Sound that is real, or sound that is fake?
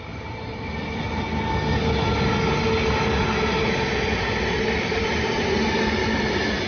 real